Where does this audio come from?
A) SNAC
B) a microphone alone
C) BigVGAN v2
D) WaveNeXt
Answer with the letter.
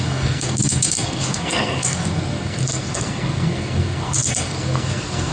A